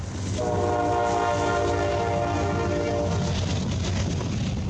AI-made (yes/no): no